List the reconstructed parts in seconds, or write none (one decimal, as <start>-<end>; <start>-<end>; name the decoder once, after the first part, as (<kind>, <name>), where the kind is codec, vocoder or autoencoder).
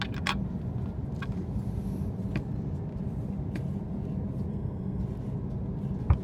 4.5-5.0 (codec, SNAC)